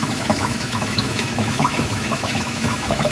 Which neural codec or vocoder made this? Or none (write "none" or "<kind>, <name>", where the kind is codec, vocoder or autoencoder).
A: autoencoder, DAC-VAE